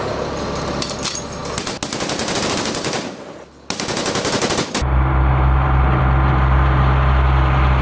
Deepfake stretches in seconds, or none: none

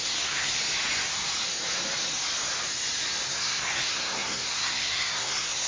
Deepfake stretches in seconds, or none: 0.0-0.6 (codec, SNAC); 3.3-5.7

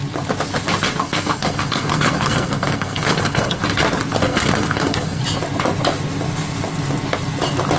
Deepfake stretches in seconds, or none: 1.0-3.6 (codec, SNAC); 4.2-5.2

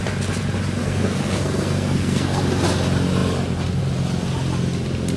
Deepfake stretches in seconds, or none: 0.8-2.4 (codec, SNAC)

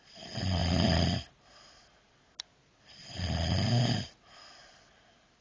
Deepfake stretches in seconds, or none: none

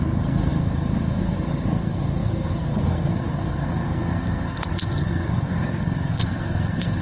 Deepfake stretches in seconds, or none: 0.0-7.0 (codec, SNAC)

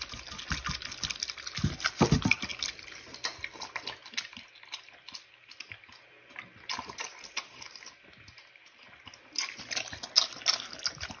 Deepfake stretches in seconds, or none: none

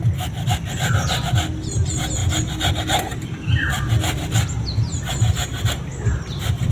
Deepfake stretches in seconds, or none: none